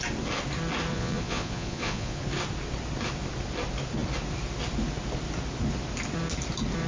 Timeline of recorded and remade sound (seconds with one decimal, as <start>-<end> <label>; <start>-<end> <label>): 0.0-0.9 recorded; 0.9-2.2 remade; 2.2-6.9 recorded